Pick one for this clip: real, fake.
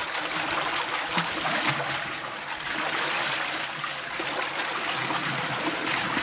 real